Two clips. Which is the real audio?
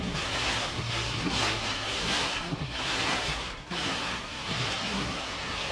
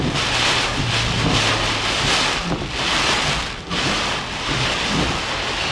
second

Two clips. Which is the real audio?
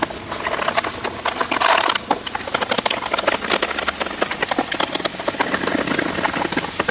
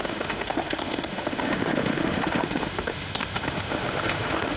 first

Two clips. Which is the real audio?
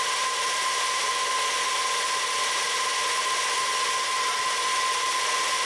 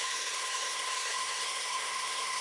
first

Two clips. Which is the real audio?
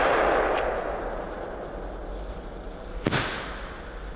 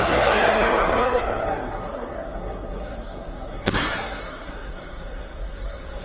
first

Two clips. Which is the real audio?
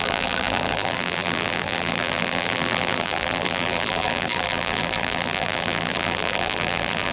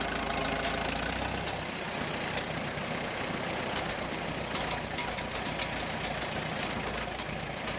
second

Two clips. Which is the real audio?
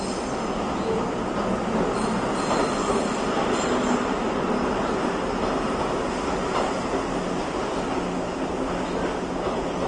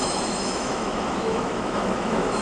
first